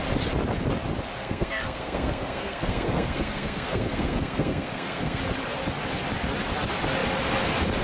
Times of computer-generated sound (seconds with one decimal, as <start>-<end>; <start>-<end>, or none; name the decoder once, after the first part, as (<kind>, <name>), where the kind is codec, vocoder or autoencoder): 1.2-5.2 (codec, SNAC)

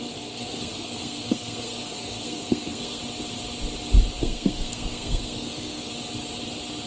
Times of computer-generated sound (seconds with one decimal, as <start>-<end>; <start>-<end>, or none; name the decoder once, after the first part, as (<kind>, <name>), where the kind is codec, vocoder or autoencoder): 0.0-3.0 (codec, SNAC); 4.2-5.9

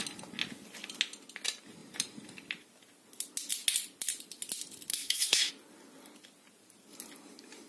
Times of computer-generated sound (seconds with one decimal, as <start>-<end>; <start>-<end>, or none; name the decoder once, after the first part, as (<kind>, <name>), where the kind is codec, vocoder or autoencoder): 4.9-5.5 (codec, SNAC)

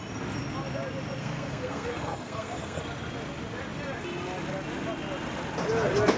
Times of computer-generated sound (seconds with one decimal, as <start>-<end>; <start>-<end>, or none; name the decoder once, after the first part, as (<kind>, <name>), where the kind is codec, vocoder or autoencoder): 1.2-2.8 (codec, SNAC)

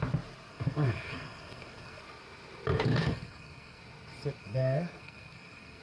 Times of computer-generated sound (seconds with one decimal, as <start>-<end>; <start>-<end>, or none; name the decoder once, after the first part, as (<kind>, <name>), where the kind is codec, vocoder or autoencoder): 0.5-2.0 (codec, SNAC); 2.9-3.8; 4.4-5.8

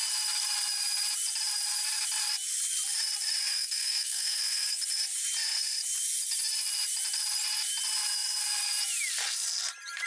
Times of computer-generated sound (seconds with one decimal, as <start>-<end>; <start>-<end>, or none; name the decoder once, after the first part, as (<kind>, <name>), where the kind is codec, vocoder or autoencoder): 3.5-4.8 (codec, SNAC)

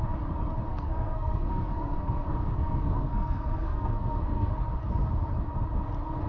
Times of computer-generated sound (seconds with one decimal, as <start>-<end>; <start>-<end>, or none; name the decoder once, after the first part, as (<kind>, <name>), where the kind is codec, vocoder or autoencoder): 0.7-4.5 (codec, SNAC)